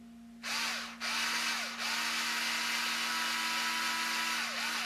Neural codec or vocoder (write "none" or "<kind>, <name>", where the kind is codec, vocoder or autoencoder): none